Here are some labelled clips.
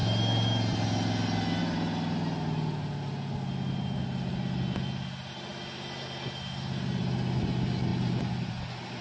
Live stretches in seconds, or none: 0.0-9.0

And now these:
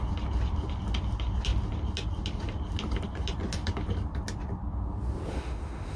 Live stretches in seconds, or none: 0.0-5.3

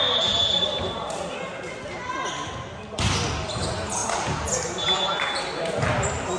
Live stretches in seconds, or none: 0.0-6.4

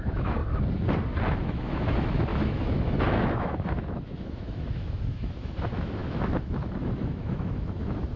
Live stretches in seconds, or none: 0.4-1.4